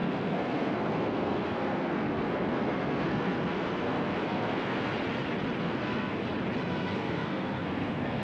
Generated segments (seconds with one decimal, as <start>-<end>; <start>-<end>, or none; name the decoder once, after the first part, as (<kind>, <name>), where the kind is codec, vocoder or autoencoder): 0.0-4.9 (codec, SNAC); 5.6-6.2; 6.7-8.2